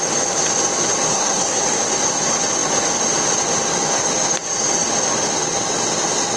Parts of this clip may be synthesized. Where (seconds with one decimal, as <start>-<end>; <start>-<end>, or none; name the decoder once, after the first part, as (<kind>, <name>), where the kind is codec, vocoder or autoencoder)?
1.1-1.6 (codec, SNAC)